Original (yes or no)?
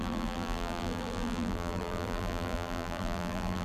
no